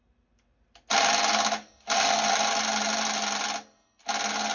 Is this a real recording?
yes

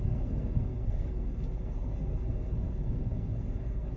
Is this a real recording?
no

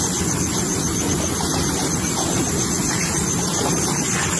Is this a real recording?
yes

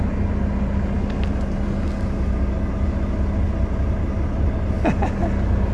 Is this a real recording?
yes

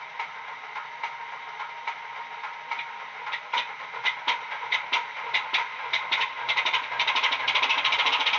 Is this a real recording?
yes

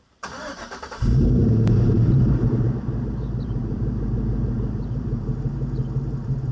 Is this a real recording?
no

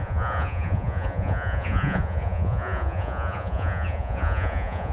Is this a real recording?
no